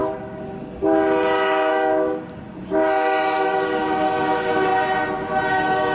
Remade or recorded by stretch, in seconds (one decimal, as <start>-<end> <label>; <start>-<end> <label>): 0.0-4.7 remade; 4.7-5.5 recorded; 5.5-5.9 remade